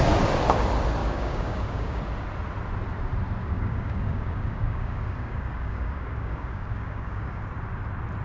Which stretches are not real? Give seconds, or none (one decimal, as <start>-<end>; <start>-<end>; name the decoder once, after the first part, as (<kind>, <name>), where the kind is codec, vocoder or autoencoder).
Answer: 1.0-2.0 (codec, DAC); 3.4-7.4